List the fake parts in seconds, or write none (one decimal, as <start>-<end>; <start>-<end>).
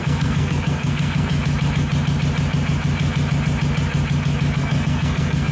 0.0-1.3; 4.6-5.5